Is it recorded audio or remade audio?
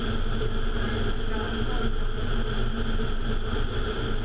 recorded